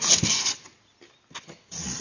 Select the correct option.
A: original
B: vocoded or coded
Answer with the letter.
A